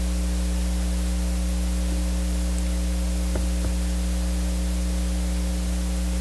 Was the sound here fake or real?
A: real